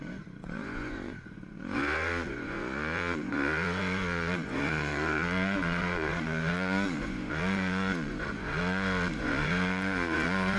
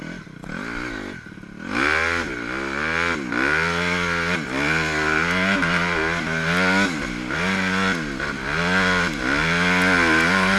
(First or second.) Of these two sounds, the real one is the second